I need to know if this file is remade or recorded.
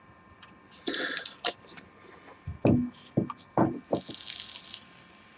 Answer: recorded